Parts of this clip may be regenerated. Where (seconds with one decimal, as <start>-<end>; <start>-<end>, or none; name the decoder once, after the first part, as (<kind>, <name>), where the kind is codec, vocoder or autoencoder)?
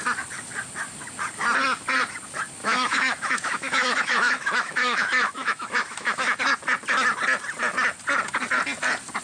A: 2.6-6.4 (autoencoder, DAC-VAE)